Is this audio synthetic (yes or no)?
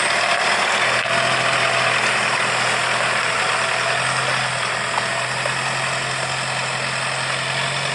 no